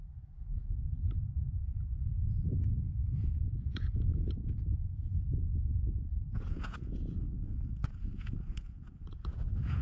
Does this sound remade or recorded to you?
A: remade